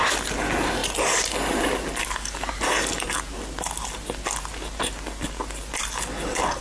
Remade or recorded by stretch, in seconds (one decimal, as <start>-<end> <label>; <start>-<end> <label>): 0.0-6.6 recorded